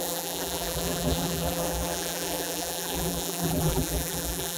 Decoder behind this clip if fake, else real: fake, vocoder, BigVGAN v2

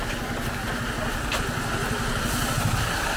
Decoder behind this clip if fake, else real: real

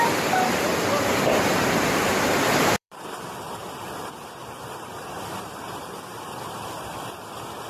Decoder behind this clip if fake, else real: fake, vocoder, BigVGAN v2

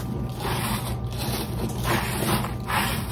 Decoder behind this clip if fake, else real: real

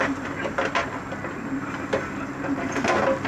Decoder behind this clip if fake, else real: real